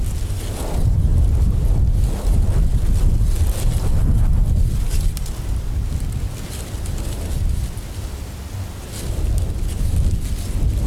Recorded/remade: recorded